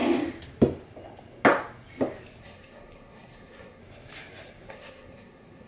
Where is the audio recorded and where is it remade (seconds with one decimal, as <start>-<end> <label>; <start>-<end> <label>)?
0.0-2.4 recorded; 2.4-3.8 remade; 3.8-4.7 recorded; 4.7-5.7 remade